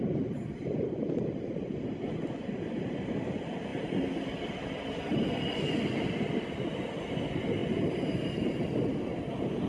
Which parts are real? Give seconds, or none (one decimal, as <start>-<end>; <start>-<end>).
0.0-9.7